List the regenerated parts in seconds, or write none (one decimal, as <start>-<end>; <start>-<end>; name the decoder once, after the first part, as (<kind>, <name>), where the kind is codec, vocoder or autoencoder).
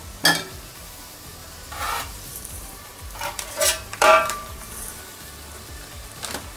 1.4-5.3 (vocoder, BigVGAN v2)